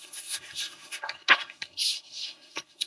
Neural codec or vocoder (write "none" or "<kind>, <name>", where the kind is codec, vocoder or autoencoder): codec, SNAC